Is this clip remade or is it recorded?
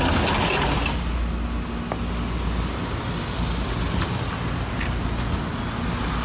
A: recorded